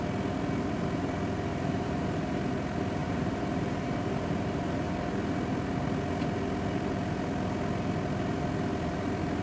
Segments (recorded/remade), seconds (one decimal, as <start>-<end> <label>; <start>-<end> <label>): 0.0-1.5 recorded; 1.5-2.4 remade; 2.4-3.0 recorded; 3.0-4.9 remade; 4.9-9.4 recorded